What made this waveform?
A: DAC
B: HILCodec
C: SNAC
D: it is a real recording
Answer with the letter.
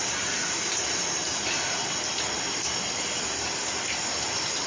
D